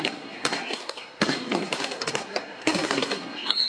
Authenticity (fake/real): fake